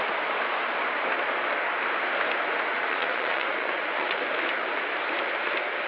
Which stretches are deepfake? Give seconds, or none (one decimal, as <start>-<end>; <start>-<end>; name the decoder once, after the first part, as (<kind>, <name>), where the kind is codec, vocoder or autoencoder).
2.7-4.2 (vocoder, Vocos)